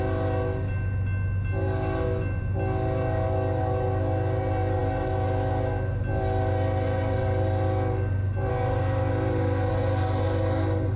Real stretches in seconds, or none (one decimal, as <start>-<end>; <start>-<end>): 0.0-11.0